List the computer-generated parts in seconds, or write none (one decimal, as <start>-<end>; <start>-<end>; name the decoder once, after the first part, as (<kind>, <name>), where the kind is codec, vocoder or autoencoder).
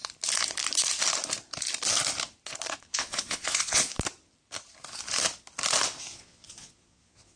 2.8-3.9 (vocoder, Vocos); 6.1-7.4